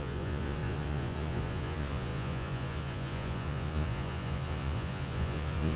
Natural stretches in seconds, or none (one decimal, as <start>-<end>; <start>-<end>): none